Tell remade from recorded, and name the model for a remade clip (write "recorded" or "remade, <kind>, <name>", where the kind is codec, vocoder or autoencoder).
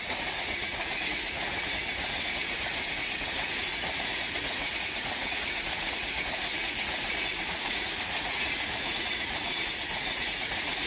remade, vocoder, Vocos